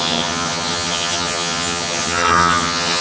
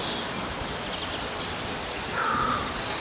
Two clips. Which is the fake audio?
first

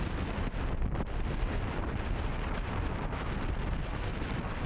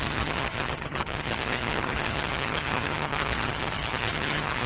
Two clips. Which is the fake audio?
second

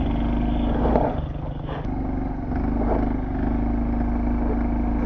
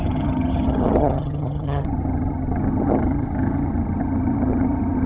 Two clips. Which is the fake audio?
second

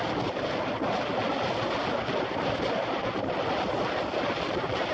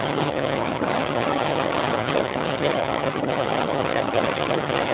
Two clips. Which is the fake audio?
second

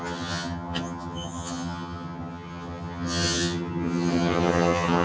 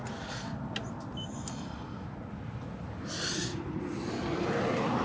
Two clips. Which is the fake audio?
first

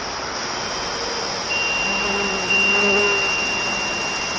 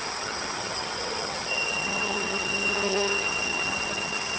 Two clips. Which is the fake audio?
second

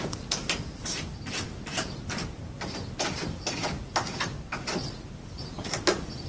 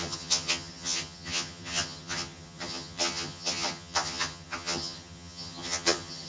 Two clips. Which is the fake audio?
second